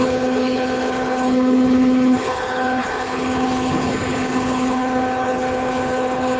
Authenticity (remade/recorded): remade